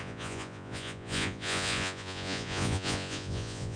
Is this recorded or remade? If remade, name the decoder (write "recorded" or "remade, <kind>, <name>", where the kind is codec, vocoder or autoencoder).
remade, vocoder, Vocos